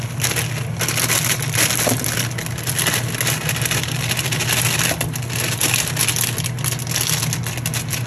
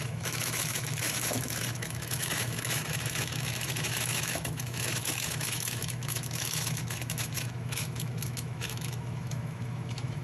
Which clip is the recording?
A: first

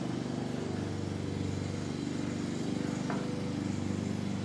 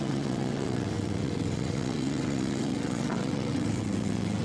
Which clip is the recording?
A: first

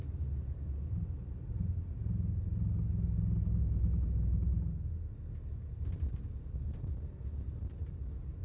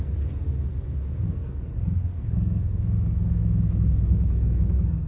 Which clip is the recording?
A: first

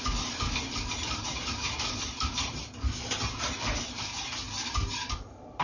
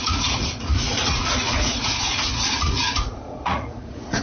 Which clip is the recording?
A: first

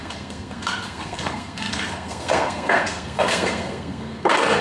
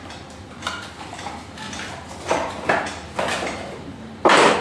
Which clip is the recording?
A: second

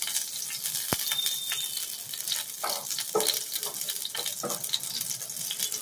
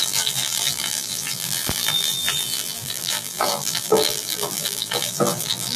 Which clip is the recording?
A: first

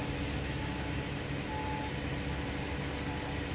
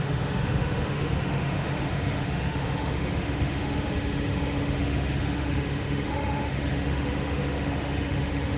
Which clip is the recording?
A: first